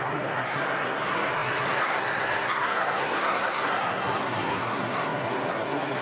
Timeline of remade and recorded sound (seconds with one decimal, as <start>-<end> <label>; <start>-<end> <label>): 0.0-6.0 remade